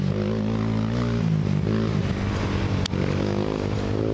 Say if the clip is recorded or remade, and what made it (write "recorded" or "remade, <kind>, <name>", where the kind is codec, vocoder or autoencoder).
recorded